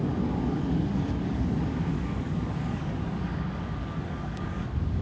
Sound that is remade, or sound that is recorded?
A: remade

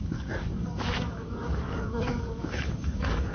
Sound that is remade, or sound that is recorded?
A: remade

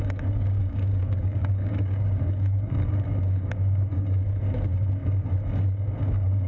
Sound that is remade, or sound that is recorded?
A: remade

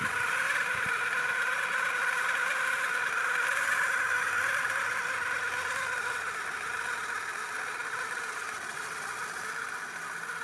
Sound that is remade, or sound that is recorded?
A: recorded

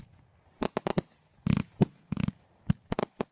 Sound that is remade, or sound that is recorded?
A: recorded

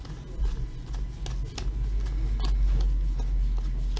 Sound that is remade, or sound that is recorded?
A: recorded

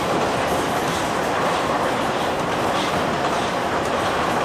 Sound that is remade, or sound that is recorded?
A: recorded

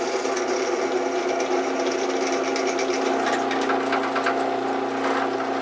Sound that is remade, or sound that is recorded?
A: recorded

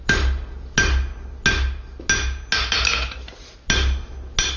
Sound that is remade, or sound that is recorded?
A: recorded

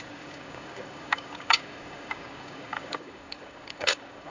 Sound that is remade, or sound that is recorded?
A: remade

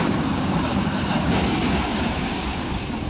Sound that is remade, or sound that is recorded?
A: remade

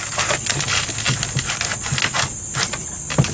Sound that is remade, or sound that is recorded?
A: recorded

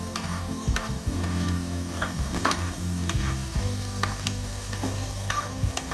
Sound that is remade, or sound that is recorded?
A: remade